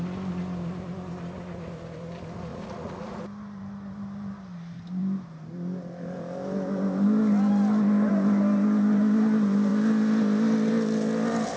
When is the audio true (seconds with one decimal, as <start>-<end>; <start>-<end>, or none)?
0.0-2.5; 3.2-11.6